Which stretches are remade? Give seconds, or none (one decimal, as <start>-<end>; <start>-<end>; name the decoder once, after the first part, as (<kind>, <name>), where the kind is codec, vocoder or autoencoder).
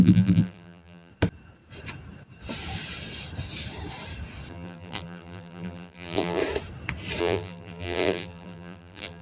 0.0-1.1 (vocoder, BigVGAN v2); 4.5-6.4; 7.2-9.2